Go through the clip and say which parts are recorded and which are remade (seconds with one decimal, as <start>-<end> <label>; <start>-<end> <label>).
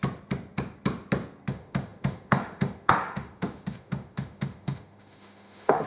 0.0-1.5 recorded; 1.5-5.9 remade